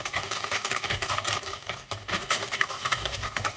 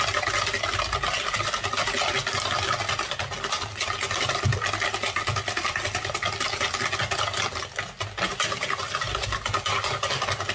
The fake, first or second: first